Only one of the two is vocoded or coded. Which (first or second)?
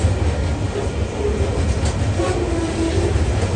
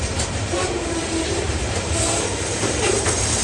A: second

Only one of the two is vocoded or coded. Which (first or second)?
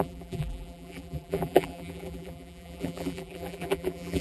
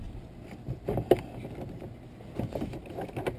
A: first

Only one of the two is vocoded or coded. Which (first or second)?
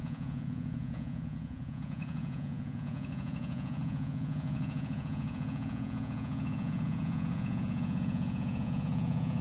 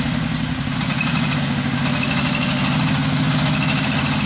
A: first